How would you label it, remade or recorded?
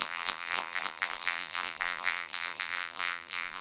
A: remade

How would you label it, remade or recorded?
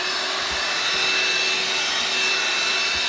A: recorded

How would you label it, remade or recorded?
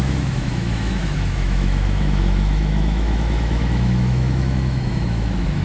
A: remade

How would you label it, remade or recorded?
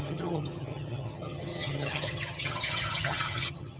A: remade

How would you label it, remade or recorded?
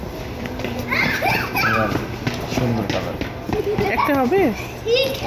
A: recorded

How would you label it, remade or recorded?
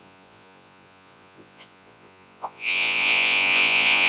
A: remade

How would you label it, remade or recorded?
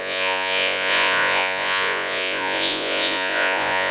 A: remade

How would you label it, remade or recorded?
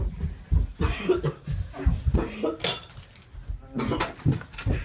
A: recorded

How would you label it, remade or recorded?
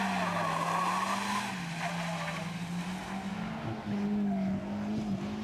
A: recorded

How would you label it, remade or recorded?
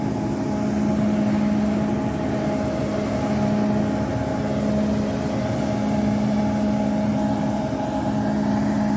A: recorded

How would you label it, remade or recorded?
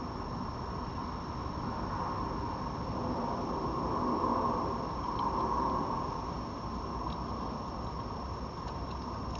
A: recorded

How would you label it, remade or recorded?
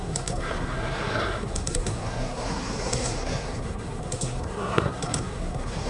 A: remade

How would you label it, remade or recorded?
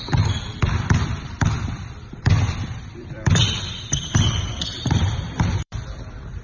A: remade